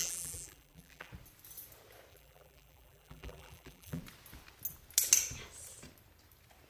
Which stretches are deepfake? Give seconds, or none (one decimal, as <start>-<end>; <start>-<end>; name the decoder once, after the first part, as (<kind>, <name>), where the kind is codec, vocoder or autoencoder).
0.0-1.1 (vocoder, BigVGAN v2); 2.1-4.0